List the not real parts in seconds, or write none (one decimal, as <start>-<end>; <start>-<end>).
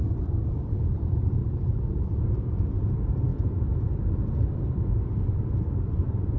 0.0-6.4